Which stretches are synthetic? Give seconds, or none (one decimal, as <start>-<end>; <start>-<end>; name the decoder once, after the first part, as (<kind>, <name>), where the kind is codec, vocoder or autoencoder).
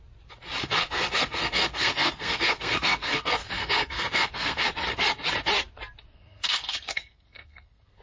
0.6-4.7 (codec, SNAC); 6.1-8.0